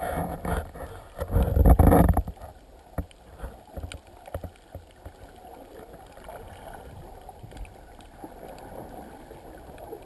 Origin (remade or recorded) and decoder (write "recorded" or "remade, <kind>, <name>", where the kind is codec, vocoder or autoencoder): recorded